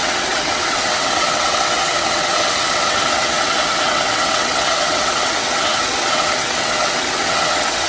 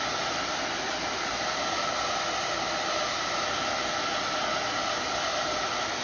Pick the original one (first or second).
second